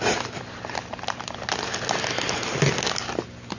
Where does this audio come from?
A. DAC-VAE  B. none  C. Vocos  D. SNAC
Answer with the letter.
B